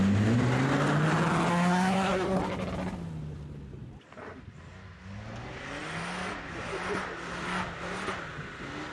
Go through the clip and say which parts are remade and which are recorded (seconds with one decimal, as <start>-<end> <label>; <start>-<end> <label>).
0.0-1.5 recorded; 1.5-2.4 remade; 2.4-8.9 recorded